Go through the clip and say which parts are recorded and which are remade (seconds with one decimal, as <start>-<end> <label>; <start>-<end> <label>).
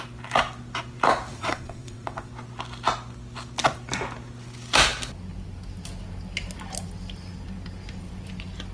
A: 0.0-1.3 recorded; 1.3-2.3 remade; 2.3-8.7 recorded